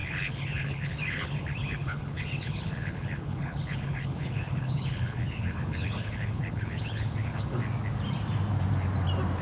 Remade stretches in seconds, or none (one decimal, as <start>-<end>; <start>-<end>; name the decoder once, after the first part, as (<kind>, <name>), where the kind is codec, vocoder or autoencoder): 0.0-7.6 (codec, HILCodec)